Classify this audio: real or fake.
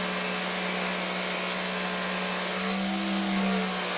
real